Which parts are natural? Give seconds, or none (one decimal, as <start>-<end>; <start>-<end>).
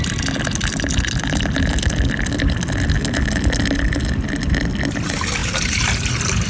0.0-6.5